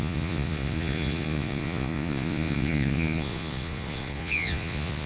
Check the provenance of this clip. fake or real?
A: fake